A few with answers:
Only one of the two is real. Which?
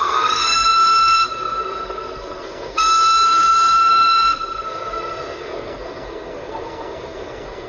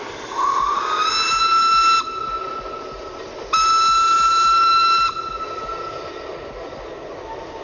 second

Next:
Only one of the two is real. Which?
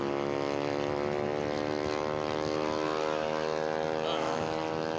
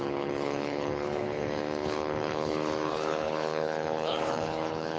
first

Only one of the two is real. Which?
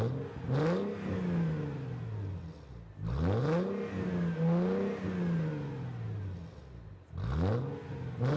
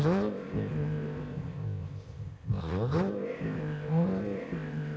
first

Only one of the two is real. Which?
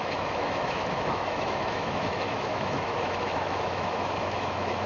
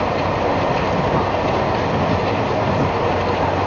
second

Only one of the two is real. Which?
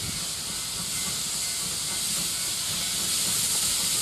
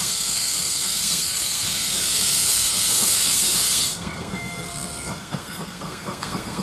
first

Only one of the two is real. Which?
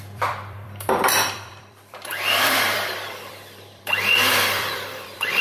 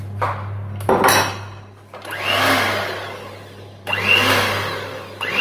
second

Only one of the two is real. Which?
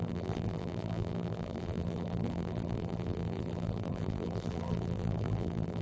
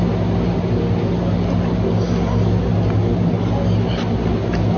second